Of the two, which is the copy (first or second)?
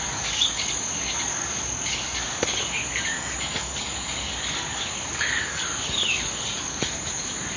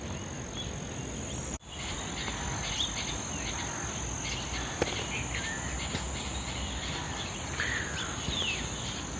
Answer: first